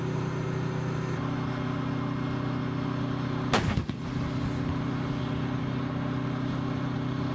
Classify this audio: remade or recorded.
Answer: recorded